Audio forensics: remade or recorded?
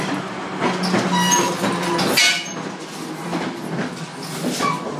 recorded